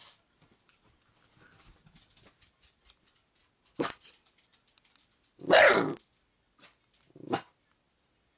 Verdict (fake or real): real